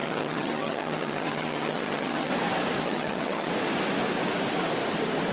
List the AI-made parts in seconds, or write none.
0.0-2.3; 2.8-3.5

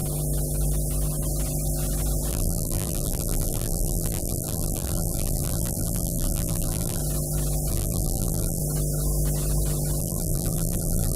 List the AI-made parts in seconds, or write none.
2.3-7.0; 7.7-8.6; 10.0-11.2

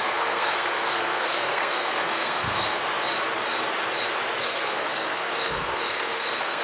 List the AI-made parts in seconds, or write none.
0.0-2.8; 4.4-6.6

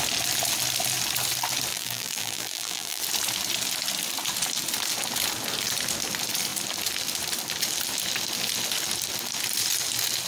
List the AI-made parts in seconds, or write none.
1.7-3.0

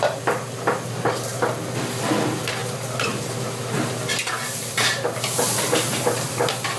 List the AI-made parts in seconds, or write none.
none

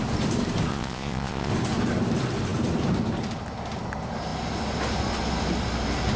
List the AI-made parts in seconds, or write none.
0.7-1.5

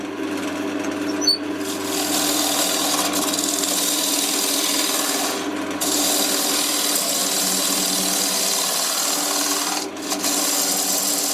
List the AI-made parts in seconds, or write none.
none